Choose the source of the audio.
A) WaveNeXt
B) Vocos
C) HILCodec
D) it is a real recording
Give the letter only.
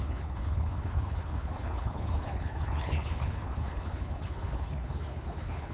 C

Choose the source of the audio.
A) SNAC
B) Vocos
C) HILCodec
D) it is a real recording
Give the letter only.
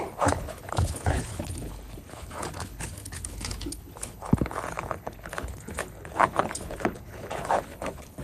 C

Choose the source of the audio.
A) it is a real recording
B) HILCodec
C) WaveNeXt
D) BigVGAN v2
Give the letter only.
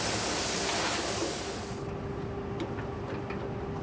A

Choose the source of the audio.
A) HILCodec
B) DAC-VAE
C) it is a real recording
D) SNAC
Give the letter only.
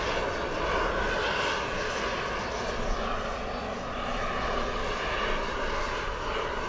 C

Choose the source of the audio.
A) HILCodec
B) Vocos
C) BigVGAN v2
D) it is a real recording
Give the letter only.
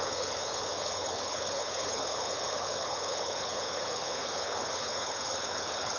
A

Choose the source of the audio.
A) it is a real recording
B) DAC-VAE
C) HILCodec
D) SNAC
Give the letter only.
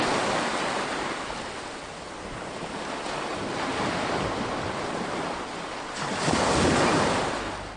A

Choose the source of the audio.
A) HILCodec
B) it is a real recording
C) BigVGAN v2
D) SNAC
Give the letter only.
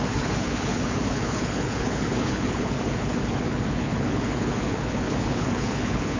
A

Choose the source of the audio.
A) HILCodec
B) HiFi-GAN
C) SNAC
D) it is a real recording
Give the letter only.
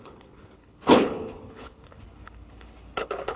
A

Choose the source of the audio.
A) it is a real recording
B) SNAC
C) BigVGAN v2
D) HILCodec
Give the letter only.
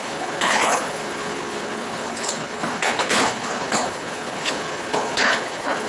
D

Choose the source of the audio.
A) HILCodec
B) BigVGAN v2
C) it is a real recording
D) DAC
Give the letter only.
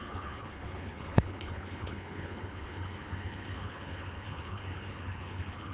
A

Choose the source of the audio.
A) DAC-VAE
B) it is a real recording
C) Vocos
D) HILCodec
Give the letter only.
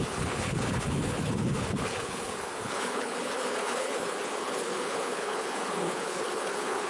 D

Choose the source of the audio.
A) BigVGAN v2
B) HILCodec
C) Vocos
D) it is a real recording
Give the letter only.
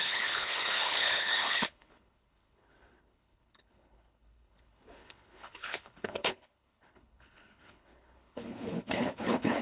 B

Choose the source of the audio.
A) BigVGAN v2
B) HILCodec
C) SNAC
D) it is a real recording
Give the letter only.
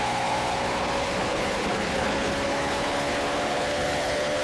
B